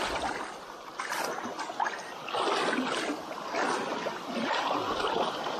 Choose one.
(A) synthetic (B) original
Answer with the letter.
B